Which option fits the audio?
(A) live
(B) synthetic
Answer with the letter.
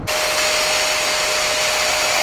A